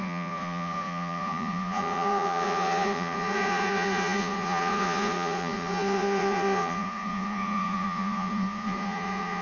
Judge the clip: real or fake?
fake